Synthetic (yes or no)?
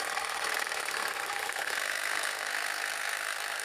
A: yes